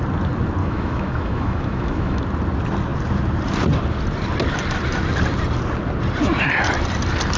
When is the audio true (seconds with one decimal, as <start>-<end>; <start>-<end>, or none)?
0.0-0.6; 2.2-7.4